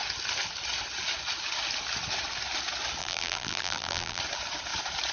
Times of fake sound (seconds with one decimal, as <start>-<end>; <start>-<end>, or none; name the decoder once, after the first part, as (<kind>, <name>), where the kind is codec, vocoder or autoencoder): 3.0-4.2 (vocoder, BigVGAN v2)